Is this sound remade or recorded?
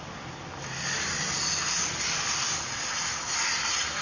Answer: recorded